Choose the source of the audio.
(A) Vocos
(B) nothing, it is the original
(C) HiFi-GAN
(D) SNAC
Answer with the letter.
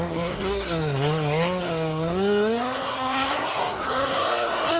D